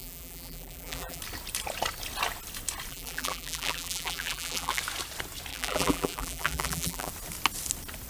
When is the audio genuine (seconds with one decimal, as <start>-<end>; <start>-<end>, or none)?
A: 1.2-2.9; 4.8-5.5; 7.1-8.1